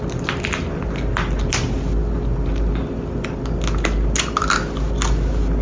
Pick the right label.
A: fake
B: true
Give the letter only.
B